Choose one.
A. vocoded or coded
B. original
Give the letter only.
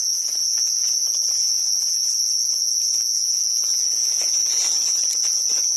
A